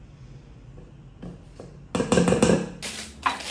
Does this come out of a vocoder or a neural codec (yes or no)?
no